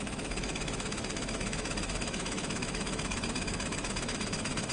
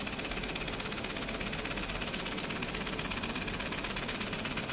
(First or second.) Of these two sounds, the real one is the second